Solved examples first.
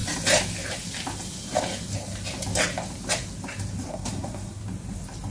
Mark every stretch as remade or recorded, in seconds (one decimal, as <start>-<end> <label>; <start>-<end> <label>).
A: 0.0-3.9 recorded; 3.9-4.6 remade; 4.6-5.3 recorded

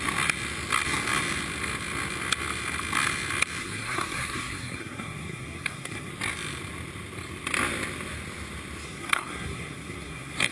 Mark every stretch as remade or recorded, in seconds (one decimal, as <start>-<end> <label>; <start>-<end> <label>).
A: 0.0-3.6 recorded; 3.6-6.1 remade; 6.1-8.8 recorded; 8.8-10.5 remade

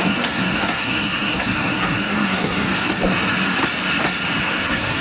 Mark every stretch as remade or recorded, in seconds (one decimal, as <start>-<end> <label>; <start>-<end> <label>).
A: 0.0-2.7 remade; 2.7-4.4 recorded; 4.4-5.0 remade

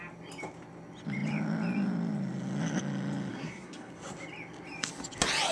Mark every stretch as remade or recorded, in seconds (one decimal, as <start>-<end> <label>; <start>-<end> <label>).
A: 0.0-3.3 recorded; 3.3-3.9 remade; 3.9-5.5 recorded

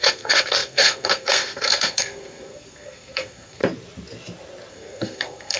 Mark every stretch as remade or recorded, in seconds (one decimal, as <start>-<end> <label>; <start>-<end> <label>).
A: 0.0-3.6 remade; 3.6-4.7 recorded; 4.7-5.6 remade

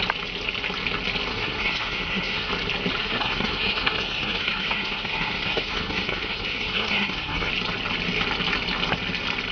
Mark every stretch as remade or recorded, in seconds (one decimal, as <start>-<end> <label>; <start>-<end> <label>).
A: 0.0-1.3 recorded; 1.3-2.5 remade; 2.5-3.0 recorded; 3.0-7.5 remade; 7.5-9.5 recorded